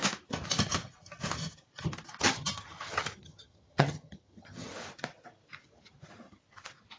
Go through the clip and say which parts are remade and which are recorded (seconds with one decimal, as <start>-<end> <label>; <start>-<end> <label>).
0.0-2.2 recorded; 2.2-4.7 remade; 4.7-7.0 recorded